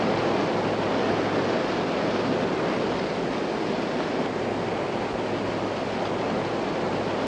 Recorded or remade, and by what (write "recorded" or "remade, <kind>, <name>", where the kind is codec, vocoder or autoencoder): recorded